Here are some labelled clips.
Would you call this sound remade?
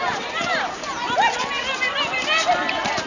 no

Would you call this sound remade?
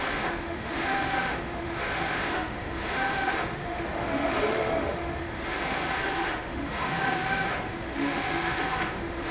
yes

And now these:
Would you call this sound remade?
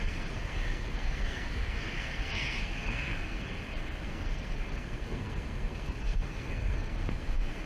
yes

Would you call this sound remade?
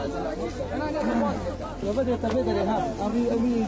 no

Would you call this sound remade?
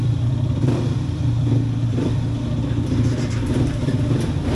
yes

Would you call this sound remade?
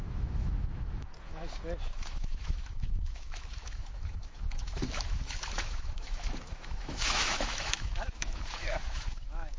yes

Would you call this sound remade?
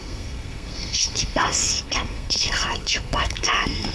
yes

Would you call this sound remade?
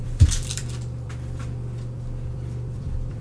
yes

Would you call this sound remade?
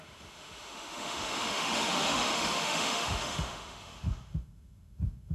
yes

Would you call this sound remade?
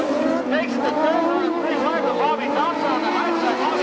no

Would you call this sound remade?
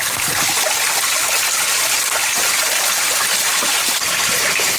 no